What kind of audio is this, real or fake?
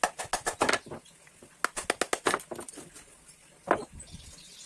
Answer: real